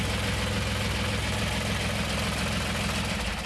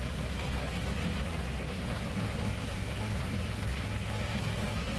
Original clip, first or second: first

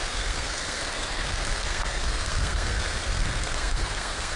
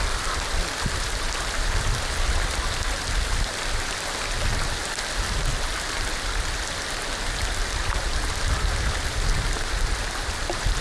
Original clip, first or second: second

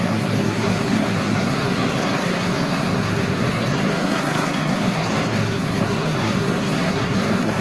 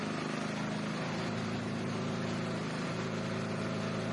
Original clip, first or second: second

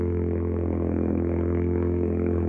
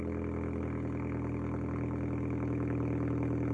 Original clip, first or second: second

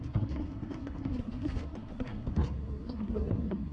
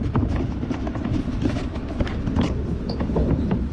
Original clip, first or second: second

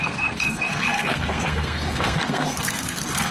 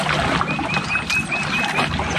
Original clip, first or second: second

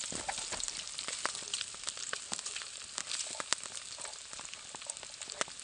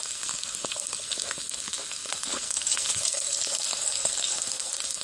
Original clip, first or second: first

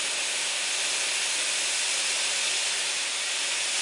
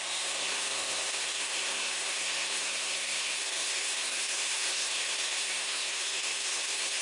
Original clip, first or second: first